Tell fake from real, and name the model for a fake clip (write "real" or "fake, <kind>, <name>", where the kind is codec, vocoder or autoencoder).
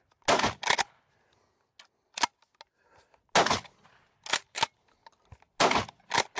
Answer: real